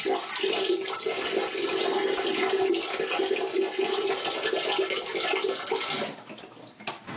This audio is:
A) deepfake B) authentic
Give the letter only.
B